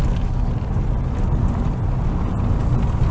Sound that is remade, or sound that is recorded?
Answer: recorded